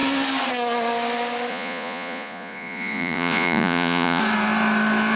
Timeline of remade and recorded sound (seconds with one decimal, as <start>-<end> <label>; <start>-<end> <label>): 0.0-1.5 recorded; 1.5-4.2 remade; 4.2-5.2 recorded